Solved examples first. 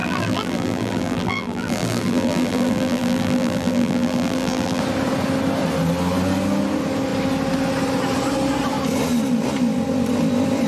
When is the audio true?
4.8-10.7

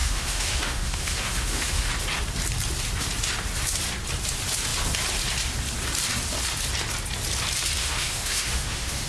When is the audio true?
1.9-7.8

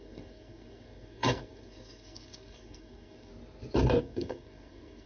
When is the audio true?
3.3-4.0

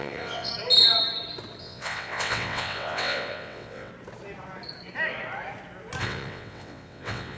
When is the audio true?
0.5-1.6; 3.9-6.0

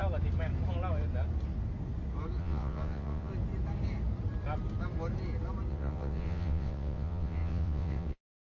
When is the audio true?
0.0-2.4; 3.3-5.7

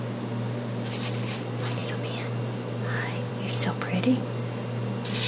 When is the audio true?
0.0-5.3

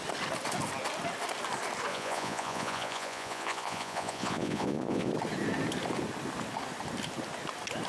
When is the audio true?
0.0-1.9; 5.1-7.9

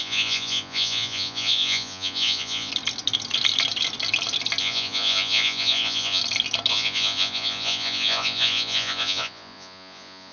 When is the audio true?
2.7-4.6; 6.2-6.7